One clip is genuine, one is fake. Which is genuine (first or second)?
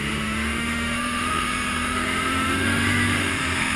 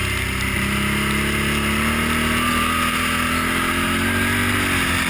second